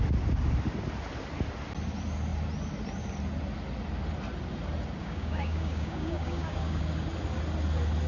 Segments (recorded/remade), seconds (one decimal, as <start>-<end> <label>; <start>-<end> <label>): 0.0-5.0 recorded; 5.0-6.8 remade; 6.8-8.1 recorded